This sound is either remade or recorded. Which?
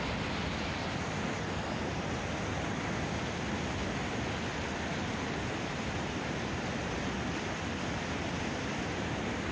remade